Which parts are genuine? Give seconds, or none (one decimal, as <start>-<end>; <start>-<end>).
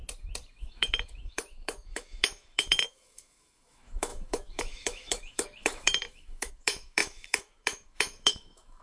0.0-0.6